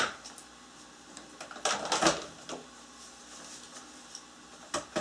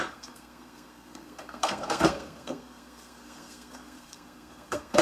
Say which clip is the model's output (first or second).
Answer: second